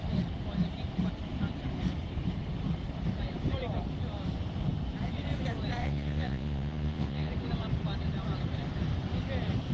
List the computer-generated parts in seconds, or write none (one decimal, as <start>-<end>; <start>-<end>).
5.8-7.3